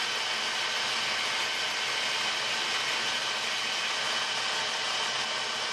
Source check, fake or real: real